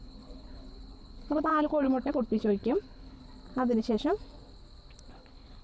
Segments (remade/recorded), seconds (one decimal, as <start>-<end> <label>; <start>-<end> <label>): 0.0-3.2 remade; 3.2-5.1 recorded; 5.1-5.6 remade

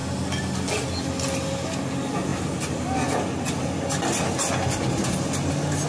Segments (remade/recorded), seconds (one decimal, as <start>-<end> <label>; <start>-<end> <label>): 0.0-5.9 recorded